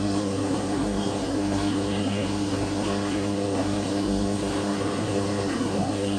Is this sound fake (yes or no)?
yes